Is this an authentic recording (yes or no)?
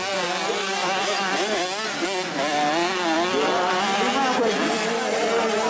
yes